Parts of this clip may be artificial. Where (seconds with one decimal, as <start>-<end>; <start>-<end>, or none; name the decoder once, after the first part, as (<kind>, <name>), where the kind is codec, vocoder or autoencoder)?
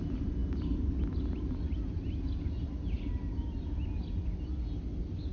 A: none